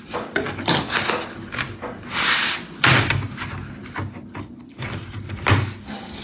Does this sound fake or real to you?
real